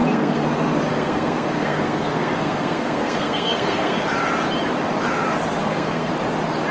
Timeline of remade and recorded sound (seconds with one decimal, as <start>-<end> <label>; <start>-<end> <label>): 0.0-4.0 remade; 4.0-5.6 recorded; 5.6-6.1 remade; 6.1-6.7 recorded